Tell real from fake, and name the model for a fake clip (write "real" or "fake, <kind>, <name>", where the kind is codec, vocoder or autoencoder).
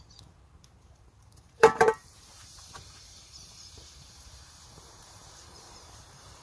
fake, vocoder, BigVGAN v2